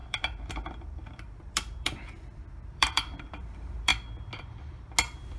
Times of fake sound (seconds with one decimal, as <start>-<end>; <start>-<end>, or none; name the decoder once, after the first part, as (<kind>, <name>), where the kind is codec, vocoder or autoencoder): 0.0-3.9 (vocoder, BigVGAN v2)